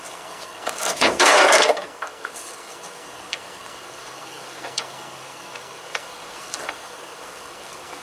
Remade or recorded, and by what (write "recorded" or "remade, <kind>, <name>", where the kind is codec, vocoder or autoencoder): remade, codec, SNAC